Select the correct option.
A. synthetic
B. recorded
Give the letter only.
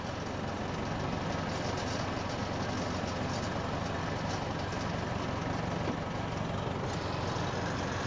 B